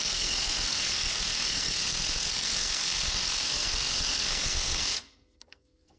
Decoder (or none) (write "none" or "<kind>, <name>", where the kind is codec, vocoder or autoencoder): codec, SNAC